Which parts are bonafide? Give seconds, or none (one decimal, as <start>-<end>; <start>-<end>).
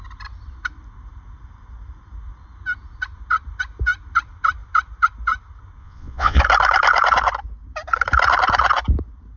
0.0-5.8; 6.4-9.4